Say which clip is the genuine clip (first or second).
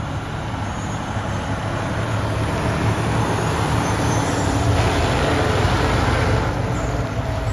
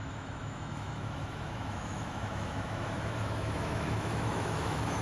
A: first